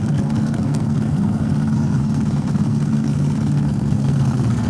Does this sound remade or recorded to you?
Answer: remade